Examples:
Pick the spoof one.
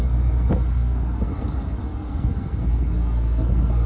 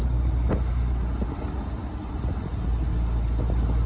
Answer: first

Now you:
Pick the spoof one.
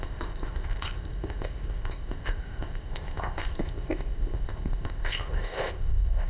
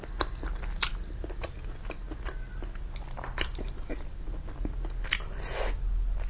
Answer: first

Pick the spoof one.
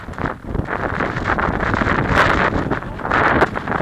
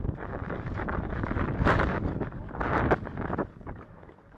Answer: second